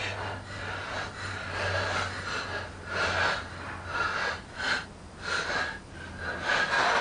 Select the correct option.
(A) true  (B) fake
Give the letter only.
A